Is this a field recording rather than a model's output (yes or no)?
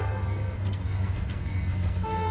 no